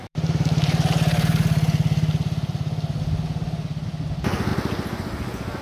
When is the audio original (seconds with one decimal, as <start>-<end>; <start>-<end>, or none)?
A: 1.3-5.6